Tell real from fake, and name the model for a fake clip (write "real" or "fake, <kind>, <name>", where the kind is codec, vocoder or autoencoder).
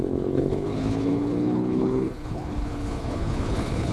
fake, codec, HILCodec